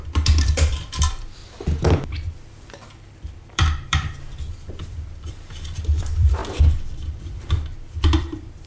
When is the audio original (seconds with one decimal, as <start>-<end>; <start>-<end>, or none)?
1.4-2.3

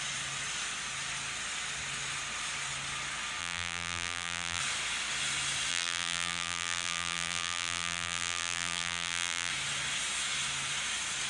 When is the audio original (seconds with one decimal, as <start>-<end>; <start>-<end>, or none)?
0.0-3.4; 4.6-5.7; 9.5-11.3

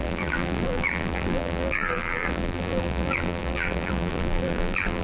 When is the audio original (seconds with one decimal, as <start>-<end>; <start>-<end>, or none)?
none

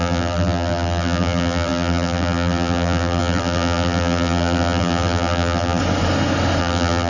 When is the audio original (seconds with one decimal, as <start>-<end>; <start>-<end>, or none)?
5.8-6.6